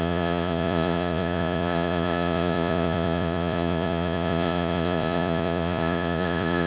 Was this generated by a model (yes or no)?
yes